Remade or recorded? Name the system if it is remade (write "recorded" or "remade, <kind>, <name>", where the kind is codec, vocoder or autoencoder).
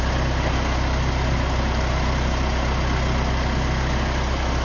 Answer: recorded